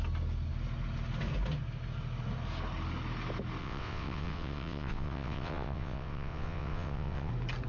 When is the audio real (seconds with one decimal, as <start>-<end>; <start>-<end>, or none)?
0.0-3.6; 7.3-7.7